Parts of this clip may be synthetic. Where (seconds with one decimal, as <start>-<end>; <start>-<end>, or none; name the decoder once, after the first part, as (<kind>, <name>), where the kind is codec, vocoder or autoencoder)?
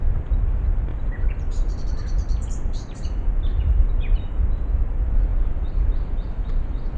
0.9-4.3 (vocoder, BigVGAN v2); 5.3-6.3